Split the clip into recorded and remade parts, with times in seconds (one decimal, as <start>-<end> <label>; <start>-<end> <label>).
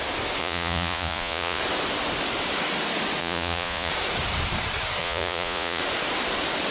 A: 0.0-0.4 recorded; 0.4-1.6 remade; 1.6-3.2 recorded; 3.2-3.9 remade; 3.9-5.0 recorded; 5.0-5.8 remade; 5.8-6.7 recorded